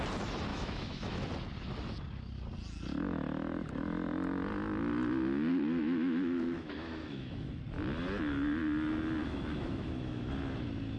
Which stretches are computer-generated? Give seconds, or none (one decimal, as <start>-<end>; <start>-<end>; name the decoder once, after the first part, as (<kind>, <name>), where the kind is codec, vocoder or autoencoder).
0.5-1.2 (autoencoder, DAC-VAE); 5.5-7.6; 9.2-10.3